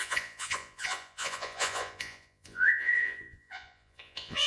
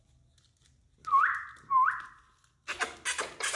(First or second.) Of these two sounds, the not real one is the first